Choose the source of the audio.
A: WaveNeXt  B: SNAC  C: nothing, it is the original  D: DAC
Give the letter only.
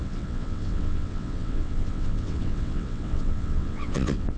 A